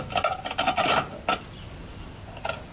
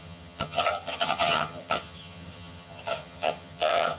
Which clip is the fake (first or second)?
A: second